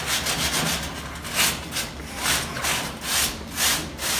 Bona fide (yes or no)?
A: yes